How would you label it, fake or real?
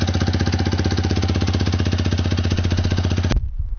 real